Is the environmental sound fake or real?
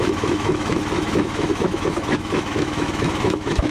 fake